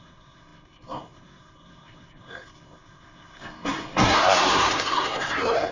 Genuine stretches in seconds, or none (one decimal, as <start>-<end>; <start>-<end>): none